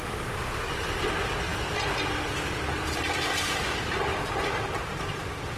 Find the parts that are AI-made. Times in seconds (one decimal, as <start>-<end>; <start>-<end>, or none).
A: 4.1-5.6